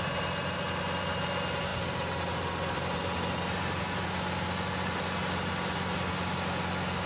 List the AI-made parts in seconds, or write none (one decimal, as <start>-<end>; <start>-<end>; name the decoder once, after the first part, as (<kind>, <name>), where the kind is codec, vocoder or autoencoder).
none

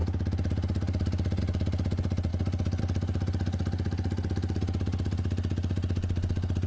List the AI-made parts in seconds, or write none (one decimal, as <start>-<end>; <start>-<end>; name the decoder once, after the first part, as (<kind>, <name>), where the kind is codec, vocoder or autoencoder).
none

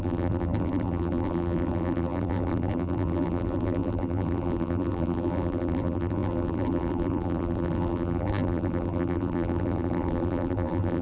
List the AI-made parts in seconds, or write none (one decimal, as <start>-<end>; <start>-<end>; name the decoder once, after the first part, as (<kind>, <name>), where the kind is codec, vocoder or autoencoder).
0.0-11.0 (vocoder, BigVGAN v2)

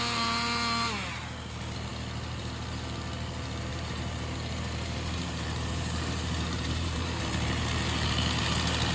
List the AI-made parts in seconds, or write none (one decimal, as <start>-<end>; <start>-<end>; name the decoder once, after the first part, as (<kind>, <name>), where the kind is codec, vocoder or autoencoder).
3.7-7.2 (vocoder, BigVGAN v2)